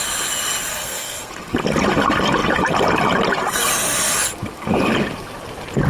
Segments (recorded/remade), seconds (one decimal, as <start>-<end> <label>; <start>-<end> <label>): 0.0-0.7 recorded; 0.7-1.3 remade; 1.3-5.9 recorded